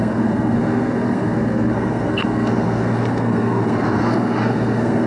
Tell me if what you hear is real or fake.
fake